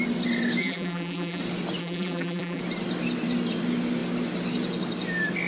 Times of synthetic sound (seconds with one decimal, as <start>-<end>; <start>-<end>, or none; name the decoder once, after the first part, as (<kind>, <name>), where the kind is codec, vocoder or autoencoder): 0.6-1.4 (vocoder, BigVGAN v2); 1.8-2.6